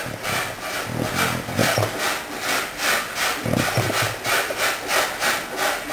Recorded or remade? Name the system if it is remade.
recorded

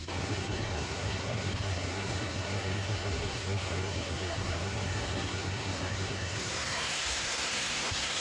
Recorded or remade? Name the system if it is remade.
remade, codec, SNAC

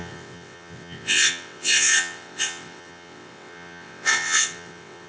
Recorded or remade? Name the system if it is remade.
remade, vocoder, WaveNeXt